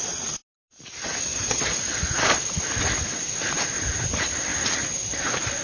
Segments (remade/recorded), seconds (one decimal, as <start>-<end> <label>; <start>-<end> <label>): 0.0-1.3 recorded; 1.3-2.6 remade; 2.6-5.6 recorded